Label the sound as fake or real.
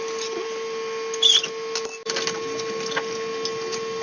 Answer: real